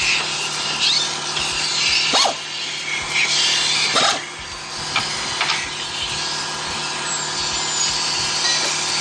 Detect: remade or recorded recorded